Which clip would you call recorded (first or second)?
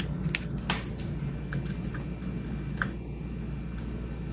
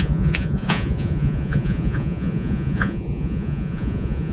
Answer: first